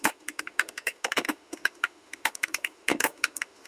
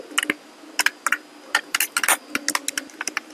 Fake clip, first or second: first